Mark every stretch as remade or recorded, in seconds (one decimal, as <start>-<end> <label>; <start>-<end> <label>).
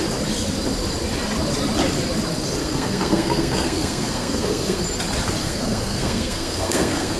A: 0.0-2.6 recorded; 2.6-4.8 remade; 4.8-5.4 recorded; 5.4-7.2 remade